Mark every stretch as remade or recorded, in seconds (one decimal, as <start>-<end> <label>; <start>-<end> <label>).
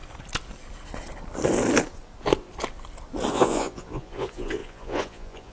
0.0-3.3 recorded; 3.3-5.5 remade